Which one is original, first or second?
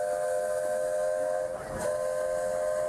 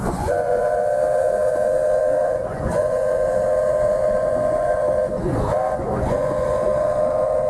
first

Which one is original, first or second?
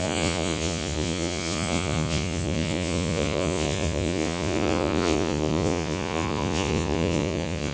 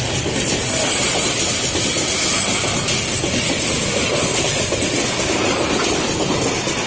second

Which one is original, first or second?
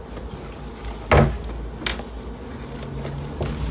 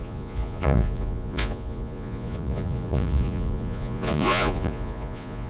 first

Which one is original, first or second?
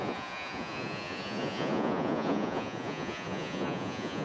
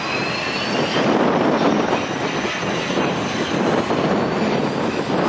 second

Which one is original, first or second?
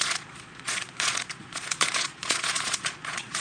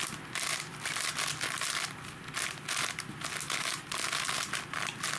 second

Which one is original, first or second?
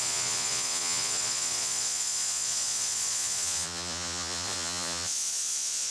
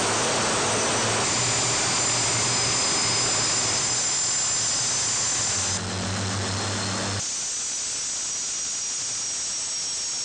second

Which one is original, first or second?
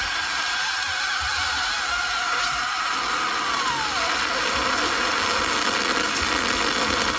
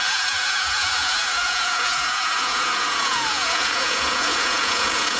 first